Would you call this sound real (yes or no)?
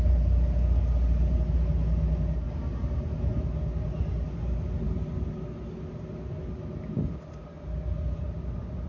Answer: yes